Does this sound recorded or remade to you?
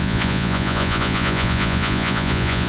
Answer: remade